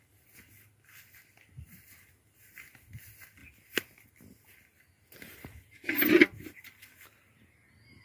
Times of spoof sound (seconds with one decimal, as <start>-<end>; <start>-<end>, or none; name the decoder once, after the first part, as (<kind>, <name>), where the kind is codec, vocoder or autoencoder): 6.2-6.8 (vocoder, BigVGAN v2)